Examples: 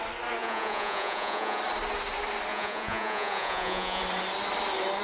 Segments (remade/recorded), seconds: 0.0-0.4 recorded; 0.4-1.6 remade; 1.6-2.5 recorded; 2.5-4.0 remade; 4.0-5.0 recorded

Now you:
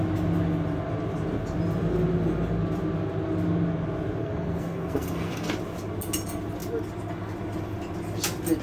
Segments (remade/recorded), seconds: 0.0-4.2 recorded; 4.2-5.5 remade; 5.5-8.6 recorded

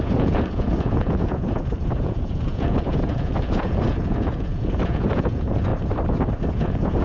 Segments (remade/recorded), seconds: 0.0-5.7 remade; 5.7-6.5 recorded; 6.5-7.0 remade

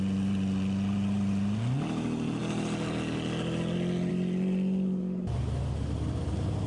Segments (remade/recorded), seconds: 0.0-6.7 recorded

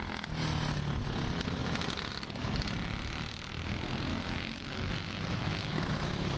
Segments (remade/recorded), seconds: 0.0-4.1 recorded; 4.1-6.4 remade

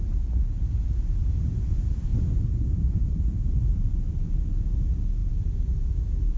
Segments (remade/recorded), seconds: 0.0-1.2 recorded; 1.2-1.7 remade; 1.7-2.1 recorded; 2.1-4.4 remade; 4.4-5.2 recorded; 5.2-6.4 remade

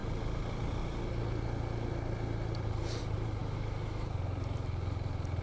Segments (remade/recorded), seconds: 0.0-3.4 recorded; 3.4-4.1 remade; 4.1-5.4 recorded